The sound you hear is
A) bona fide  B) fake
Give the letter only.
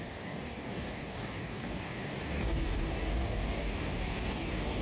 B